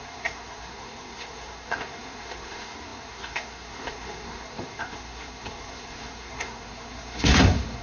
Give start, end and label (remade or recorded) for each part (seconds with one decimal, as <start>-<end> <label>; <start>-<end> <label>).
0.0-7.8 remade